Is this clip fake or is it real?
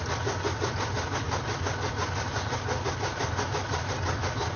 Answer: real